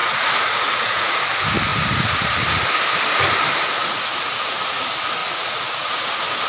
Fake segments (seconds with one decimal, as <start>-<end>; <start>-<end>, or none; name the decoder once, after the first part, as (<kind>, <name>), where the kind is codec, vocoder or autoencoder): 0.0-1.2 (vocoder, Vocos); 3.8-4.8; 5.2-6.1